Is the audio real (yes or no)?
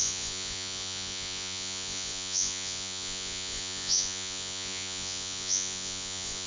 no